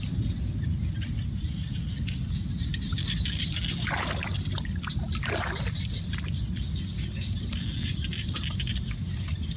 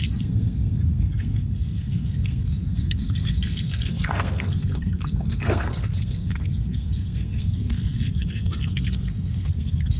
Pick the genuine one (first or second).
first